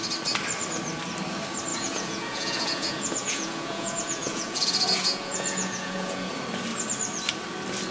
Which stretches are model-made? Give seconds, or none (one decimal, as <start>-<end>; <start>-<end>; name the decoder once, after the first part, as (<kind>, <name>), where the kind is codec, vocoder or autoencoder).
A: 1.7-6.3 (vocoder, Vocos)